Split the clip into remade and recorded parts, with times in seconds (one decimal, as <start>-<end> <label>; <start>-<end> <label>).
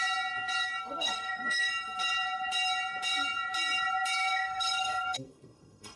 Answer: 0.0-0.8 recorded; 0.8-1.7 remade; 1.7-4.2 recorded; 4.2-6.0 remade